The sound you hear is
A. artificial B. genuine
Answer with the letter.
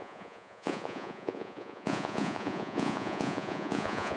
A